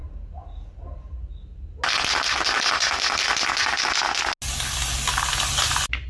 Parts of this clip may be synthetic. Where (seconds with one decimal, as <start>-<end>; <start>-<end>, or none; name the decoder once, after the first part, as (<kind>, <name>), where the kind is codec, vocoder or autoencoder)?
none